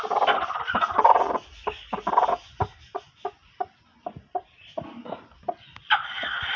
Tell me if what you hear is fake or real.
real